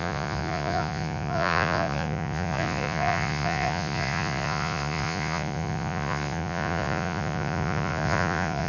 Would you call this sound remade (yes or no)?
yes